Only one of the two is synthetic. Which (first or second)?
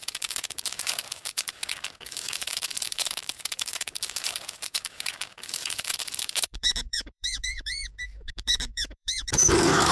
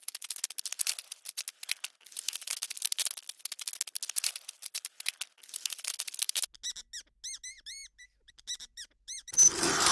first